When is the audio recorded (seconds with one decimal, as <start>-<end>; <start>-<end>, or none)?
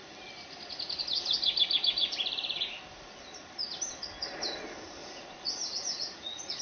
0.0-5.0